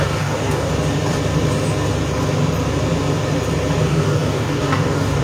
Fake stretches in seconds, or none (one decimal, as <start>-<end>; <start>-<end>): 0.0-0.7; 3.8-5.2